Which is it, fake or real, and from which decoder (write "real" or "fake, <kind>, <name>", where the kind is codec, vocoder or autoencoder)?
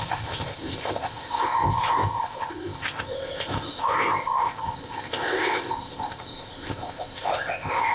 fake, codec, ZipCodec